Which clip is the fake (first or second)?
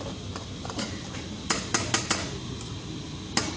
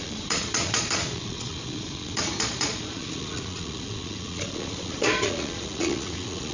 second